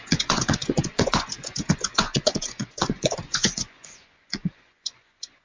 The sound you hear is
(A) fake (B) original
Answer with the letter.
A